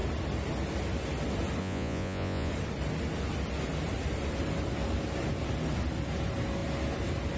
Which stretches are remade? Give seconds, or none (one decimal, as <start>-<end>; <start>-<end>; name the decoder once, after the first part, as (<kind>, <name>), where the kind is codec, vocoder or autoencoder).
1.6-2.5 (vocoder, Vocos)